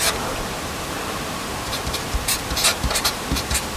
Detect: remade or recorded remade